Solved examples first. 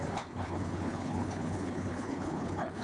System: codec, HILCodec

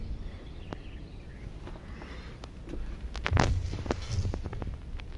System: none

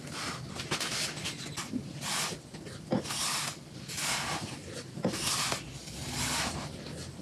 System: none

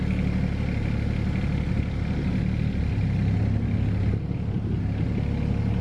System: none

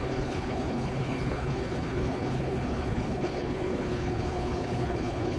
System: codec, HILCodec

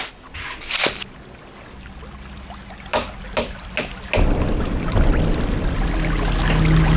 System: none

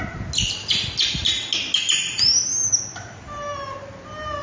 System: none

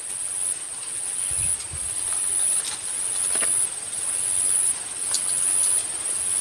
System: none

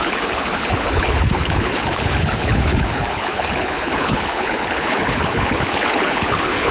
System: codec, HILCodec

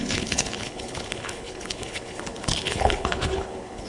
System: codec, HILCodec